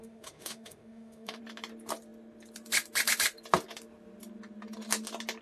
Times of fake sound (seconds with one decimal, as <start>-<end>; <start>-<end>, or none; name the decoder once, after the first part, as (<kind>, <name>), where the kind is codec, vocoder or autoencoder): 0.0-1.4 (autoencoder, DAC-VAE)